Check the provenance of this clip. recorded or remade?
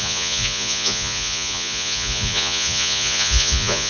remade